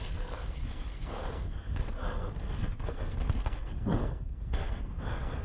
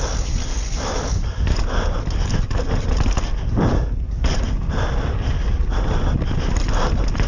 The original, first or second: second